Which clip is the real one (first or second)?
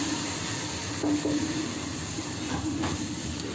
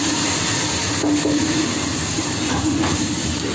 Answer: second